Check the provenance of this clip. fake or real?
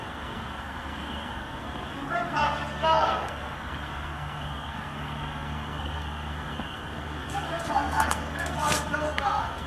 fake